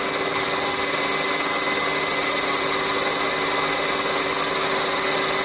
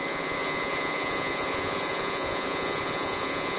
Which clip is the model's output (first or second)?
second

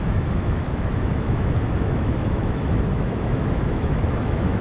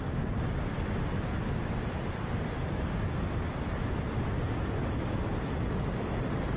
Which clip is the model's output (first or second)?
first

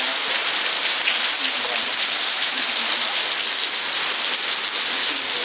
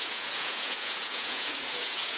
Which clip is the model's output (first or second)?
second